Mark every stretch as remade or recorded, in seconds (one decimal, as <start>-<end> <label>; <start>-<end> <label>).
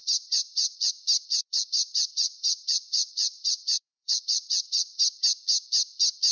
0.0-0.9 remade; 0.9-1.3 recorded; 1.3-5.0 remade; 5.0-6.3 recorded